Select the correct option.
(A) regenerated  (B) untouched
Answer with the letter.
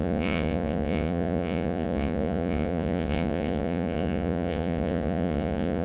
A